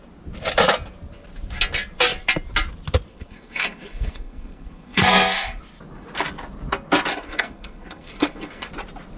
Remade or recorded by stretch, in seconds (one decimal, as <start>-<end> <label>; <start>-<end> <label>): 0.0-3.1 recorded; 3.1-5.6 remade; 5.6-7.1 recorded; 7.1-8.7 remade; 8.7-9.2 recorded

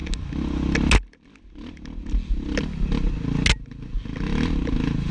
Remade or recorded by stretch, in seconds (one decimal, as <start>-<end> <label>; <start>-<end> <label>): 0.0-5.1 recorded

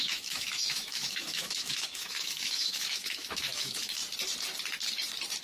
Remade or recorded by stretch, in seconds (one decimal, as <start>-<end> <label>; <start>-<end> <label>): 0.0-4.0 remade; 4.0-5.4 recorded

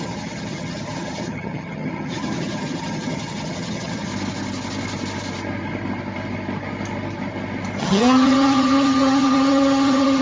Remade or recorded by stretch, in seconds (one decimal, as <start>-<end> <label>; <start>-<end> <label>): 0.0-4.1 remade; 4.1-7.8 recorded; 7.8-10.2 remade

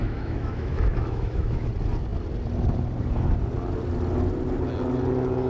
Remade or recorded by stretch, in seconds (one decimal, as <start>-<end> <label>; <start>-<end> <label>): 0.0-1.7 remade; 1.7-5.5 recorded

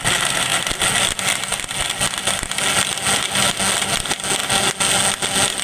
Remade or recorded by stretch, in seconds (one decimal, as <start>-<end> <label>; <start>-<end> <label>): 0.0-5.6 recorded